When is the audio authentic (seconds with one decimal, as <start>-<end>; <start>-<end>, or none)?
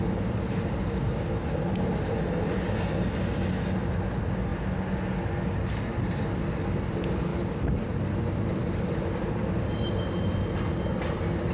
0.0-11.5